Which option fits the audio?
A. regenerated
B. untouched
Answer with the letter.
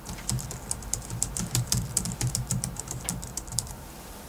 A